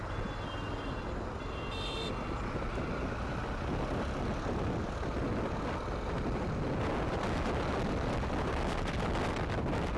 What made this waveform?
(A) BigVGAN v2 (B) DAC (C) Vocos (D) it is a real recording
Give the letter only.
D